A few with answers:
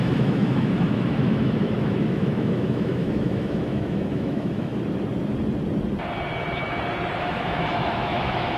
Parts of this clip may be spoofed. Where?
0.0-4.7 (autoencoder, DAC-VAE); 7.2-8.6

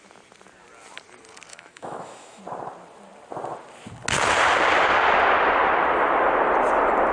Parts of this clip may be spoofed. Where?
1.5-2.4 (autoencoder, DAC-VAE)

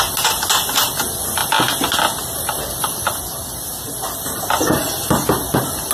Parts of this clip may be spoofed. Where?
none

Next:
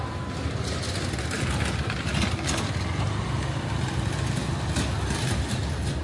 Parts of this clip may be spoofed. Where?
none

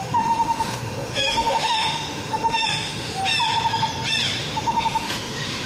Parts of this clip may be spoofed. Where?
0.0-3.2 (autoencoder, DAC-VAE); 4.4-5.7

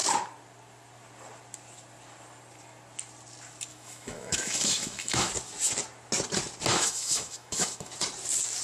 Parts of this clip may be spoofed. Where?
3.7-5.3 (autoencoder, DAC-VAE); 6.7-7.9

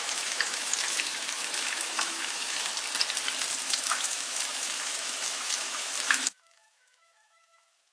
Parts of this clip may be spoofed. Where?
0.0-2.7 (autoencoder, DAC-VAE); 3.6-7.9